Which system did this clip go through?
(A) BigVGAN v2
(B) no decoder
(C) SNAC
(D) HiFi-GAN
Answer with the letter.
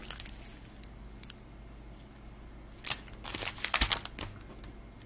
B